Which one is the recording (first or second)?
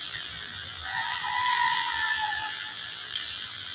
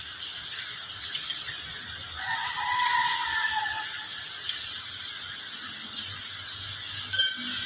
second